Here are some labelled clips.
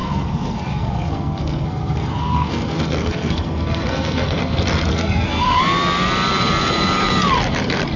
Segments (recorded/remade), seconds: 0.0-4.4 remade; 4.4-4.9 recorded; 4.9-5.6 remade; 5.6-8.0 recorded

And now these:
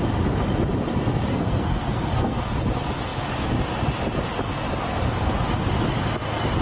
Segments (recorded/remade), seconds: 0.0-1.3 recorded; 1.3-2.4 remade; 2.4-6.6 recorded

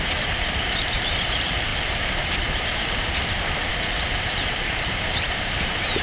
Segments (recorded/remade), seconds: 0.0-6.0 remade

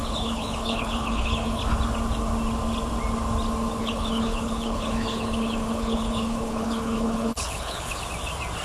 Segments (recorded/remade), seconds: 0.0-1.6 remade; 1.6-3.8 recorded; 3.8-8.0 remade; 8.0-8.6 recorded

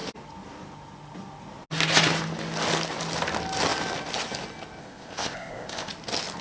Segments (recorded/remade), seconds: 0.0-4.8 recorded; 4.8-5.9 remade; 5.9-6.4 recorded